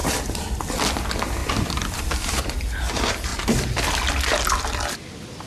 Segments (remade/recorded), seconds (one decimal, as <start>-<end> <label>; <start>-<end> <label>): 0.0-0.6 remade; 0.6-1.4 recorded; 1.4-2.9 remade; 2.9-3.3 recorded; 3.3-3.8 remade; 3.8-5.5 recorded